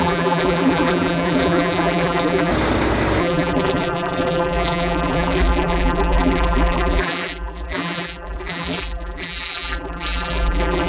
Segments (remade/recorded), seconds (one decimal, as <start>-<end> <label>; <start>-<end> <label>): 0.0-2.5 remade; 2.5-3.2 recorded; 3.2-10.9 remade

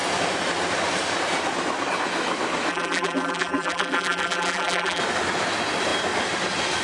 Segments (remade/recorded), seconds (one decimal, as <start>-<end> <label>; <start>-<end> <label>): 0.0-2.7 recorded; 2.7-5.0 remade; 5.0-6.8 recorded

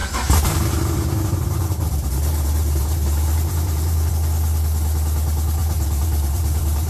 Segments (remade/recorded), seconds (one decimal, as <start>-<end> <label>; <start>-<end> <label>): 0.0-4.1 remade; 4.1-5.6 recorded; 5.6-6.9 remade

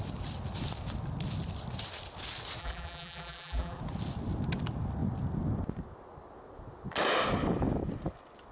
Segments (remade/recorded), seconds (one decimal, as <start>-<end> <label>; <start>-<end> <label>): 0.0-2.6 recorded; 2.6-3.8 remade; 3.8-8.5 recorded

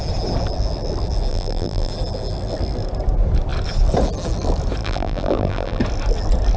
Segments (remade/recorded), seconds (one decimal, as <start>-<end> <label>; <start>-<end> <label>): 0.0-1.3 recorded; 1.3-1.9 remade; 1.9-4.8 recorded; 4.8-5.8 remade; 5.8-6.6 recorded

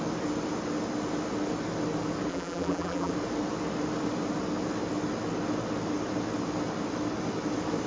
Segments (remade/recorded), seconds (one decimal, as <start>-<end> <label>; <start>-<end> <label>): 0.0-2.3 recorded; 2.3-3.1 remade; 3.1-7.9 recorded

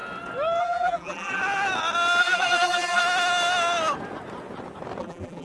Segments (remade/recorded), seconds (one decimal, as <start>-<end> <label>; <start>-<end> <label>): 0.0-0.6 recorded; 0.6-1.4 remade; 1.4-2.2 recorded; 2.2-3.0 remade; 3.0-5.0 recorded; 5.0-5.4 remade